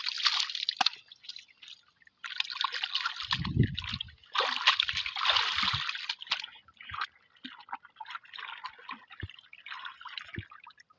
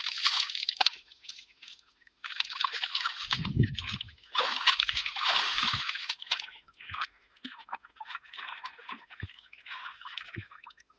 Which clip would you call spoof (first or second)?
second